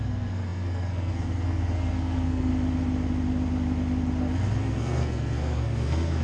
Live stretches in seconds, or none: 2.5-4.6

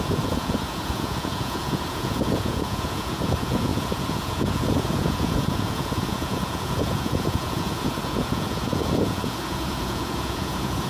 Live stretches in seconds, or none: none

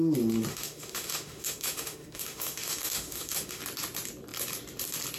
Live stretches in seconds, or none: 0.0-0.5; 3.6-5.2

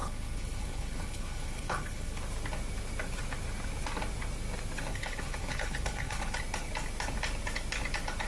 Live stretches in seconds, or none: 2.2-4.9; 6.4-8.3

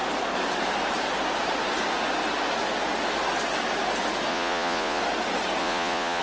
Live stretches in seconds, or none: 0.0-4.3; 5.0-5.6

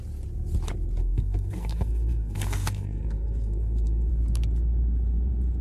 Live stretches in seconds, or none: 0.0-1.0; 4.1-5.6